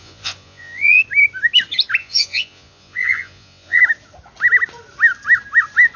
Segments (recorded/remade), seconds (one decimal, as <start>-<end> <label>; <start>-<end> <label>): 0.0-1.0 remade; 1.0-2.0 recorded; 2.0-3.8 remade; 3.8-6.0 recorded